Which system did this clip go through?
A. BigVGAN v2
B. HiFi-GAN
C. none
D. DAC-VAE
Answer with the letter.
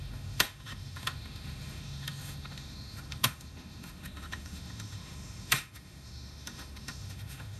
D